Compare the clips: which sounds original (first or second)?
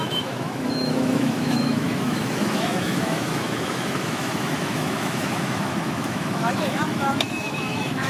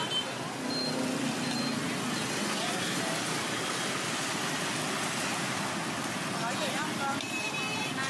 second